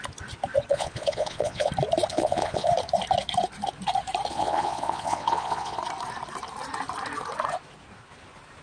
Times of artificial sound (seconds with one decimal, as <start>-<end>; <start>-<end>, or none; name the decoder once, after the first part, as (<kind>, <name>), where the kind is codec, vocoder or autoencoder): 0.7-1.7 (vocoder, Vocos); 2.1-2.7; 4.3-5.8